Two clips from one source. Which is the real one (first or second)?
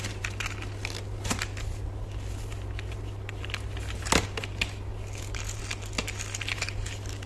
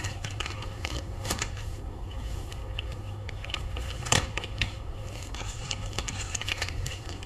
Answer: first